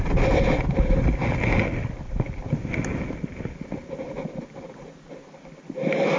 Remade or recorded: recorded